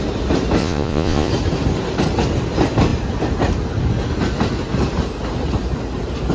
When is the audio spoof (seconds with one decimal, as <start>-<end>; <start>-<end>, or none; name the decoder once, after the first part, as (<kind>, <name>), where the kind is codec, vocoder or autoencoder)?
0.6-1.3 (vocoder, Vocos)